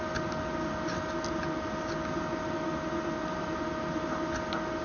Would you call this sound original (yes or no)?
yes